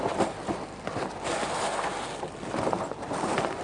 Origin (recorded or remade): recorded